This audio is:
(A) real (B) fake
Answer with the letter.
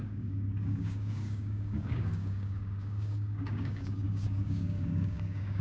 B